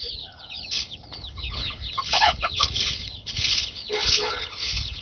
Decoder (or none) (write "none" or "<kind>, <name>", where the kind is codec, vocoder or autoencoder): codec, HILCodec